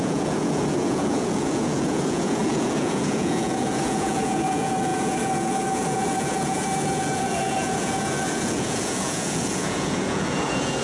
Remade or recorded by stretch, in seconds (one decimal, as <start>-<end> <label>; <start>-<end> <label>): 0.0-10.8 remade